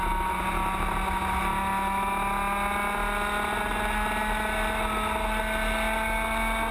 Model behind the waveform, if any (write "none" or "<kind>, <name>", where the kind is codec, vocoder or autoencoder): none